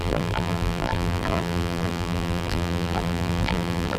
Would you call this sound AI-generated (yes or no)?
yes